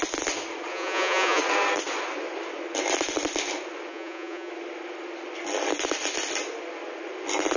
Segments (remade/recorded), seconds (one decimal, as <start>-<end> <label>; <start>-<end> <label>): 0.0-0.7 recorded; 0.7-1.4 remade; 1.4-3.9 recorded; 3.9-4.5 remade; 4.5-7.6 recorded